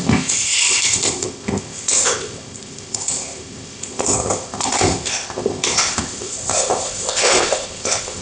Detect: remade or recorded remade